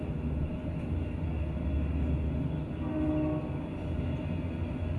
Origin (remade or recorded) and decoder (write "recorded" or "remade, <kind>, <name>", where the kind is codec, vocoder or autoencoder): recorded